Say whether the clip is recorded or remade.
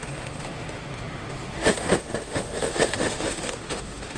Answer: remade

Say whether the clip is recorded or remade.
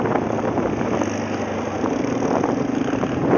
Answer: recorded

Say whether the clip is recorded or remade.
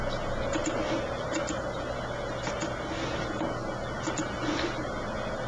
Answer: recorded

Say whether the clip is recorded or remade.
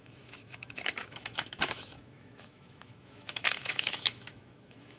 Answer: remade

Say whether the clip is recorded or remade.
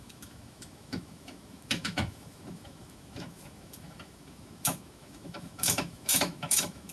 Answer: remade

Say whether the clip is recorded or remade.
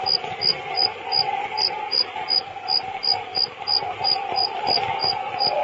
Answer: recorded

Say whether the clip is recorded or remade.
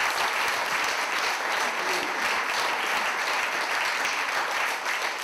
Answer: recorded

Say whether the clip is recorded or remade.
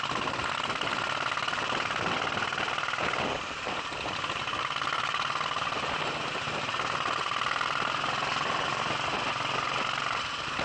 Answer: recorded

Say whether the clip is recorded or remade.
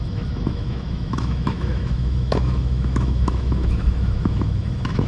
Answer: remade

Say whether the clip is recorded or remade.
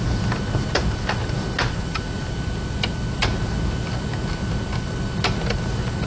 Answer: recorded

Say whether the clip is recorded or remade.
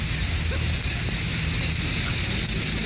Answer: recorded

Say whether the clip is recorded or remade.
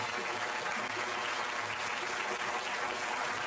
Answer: recorded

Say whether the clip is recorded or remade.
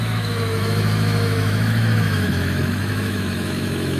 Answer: remade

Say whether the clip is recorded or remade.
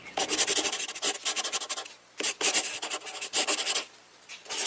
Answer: recorded